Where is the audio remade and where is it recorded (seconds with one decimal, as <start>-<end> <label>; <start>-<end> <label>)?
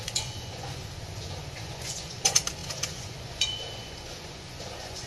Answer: 0.0-5.1 remade